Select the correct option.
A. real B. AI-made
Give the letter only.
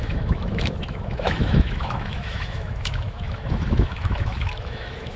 B